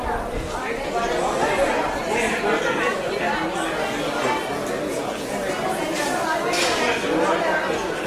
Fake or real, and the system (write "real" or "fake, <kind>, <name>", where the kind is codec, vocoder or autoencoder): real